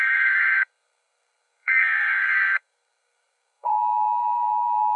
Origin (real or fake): fake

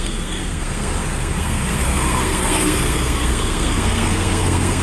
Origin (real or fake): fake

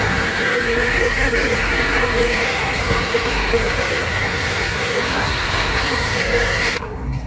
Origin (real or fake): fake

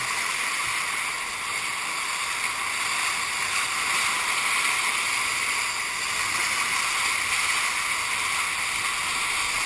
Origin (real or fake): real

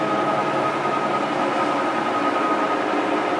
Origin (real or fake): real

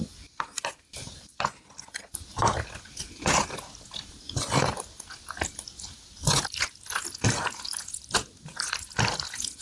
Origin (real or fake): real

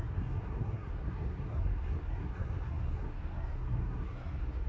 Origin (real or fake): fake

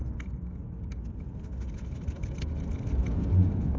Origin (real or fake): real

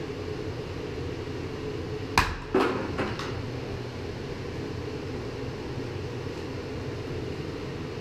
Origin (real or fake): real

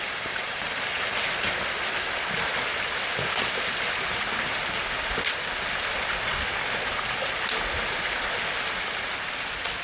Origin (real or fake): real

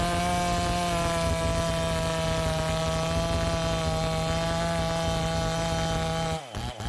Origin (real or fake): real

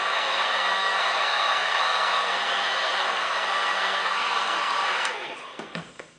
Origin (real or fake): fake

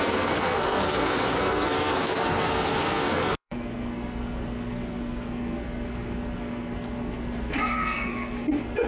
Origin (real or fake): fake